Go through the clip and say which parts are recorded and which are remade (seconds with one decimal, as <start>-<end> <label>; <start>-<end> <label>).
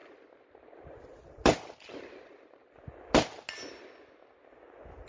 0.0-5.1 recorded